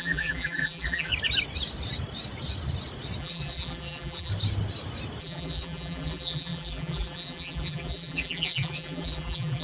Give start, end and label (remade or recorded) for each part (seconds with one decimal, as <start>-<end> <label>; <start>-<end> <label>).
0.0-1.1 remade; 1.1-3.2 recorded; 3.2-4.3 remade; 4.3-5.2 recorded; 5.2-9.6 remade